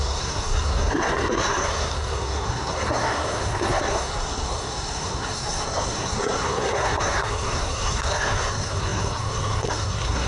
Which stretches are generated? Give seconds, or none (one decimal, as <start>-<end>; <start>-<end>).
0.0-10.3